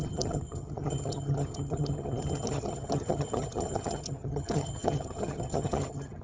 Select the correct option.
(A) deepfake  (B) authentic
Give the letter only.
A